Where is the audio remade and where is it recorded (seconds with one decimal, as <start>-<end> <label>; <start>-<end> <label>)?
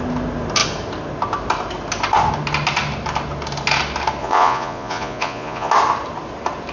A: 0.0-4.2 recorded; 4.2-5.7 remade; 5.7-6.7 recorded